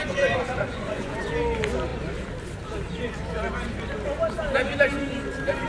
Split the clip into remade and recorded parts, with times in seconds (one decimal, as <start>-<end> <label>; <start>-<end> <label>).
0.0-1.3 remade; 1.3-5.7 recorded